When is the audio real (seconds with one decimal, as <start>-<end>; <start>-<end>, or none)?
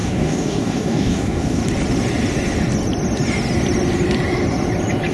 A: 1.6-5.1